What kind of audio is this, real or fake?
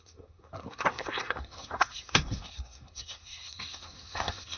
fake